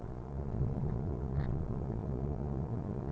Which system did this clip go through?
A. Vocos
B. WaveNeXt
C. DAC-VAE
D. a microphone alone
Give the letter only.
A